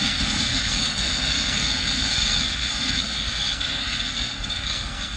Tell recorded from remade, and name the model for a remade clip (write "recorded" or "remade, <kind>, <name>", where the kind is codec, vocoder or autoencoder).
remade, codec, SNAC